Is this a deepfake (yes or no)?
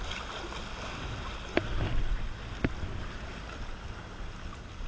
no